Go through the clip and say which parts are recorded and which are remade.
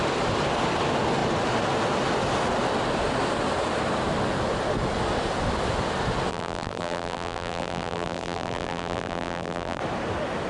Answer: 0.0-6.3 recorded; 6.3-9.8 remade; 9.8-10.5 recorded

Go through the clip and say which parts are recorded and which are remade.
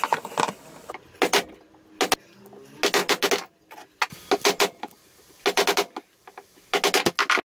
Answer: 0.0-7.6 recorded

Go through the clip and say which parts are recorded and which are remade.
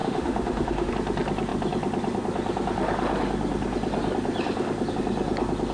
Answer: 0.0-0.9 remade; 0.9-5.7 recorded